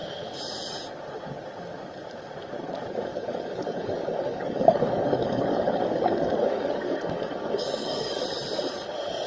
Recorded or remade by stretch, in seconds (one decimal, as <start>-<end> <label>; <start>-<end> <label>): 0.0-3.1 recorded; 3.1-8.2 remade; 8.2-9.3 recorded